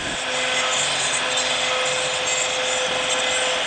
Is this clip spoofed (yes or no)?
no